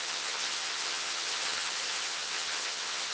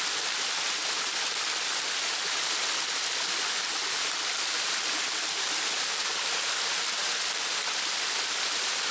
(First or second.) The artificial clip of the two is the first